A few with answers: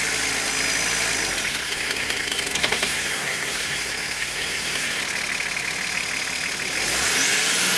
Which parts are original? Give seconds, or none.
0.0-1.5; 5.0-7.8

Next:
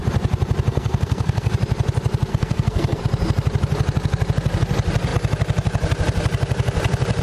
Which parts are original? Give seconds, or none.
0.0-0.7; 1.5-2.3; 3.0-7.2

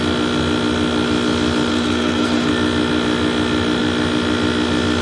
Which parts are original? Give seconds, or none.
0.0-1.7; 2.5-5.0

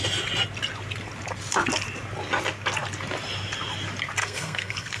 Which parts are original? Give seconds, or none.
0.0-4.2

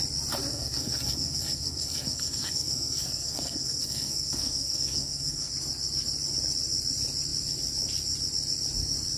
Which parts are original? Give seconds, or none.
0.0-0.5; 5.5-9.2

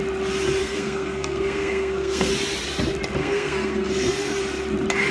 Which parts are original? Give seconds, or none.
0.0-0.6; 2.3-3.2; 4.4-5.1

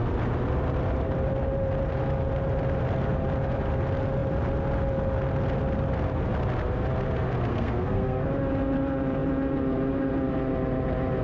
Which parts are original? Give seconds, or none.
0.0-7.5; 8.3-11.2